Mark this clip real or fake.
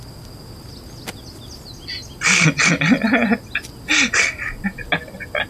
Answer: real